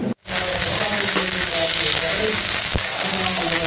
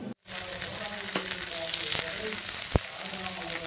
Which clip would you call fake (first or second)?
first